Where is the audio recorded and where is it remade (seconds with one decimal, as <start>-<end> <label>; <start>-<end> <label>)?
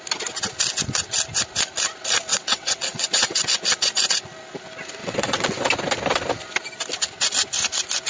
0.0-2.3 recorded; 2.3-3.6 remade; 3.6-5.0 recorded; 5.0-5.7 remade; 5.7-8.1 recorded